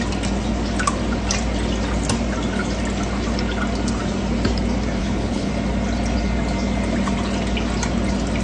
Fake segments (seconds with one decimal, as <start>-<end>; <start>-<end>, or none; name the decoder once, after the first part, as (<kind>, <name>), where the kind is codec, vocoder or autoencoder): 5.0-5.5 (codec, HILCodec)